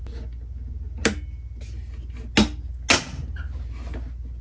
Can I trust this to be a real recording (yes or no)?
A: yes